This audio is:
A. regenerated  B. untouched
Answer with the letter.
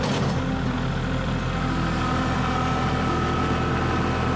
B